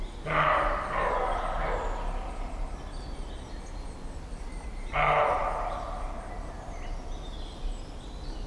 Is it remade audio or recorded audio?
recorded